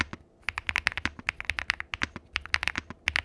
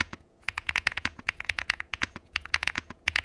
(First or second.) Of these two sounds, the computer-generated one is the second